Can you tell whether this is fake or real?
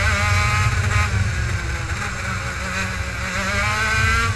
real